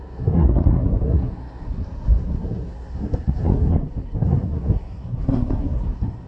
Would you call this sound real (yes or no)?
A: no